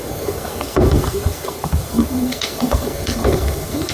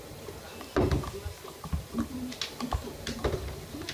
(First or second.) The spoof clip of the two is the first